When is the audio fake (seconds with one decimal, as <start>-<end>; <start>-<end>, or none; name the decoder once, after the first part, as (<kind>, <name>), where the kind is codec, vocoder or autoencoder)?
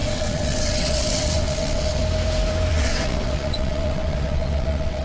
0.0-2.0 (vocoder, WaveNeXt); 2.7-5.0